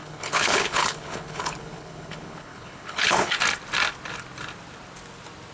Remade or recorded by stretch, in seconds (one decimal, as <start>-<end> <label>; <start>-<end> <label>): 0.0-3.3 remade; 3.3-5.5 recorded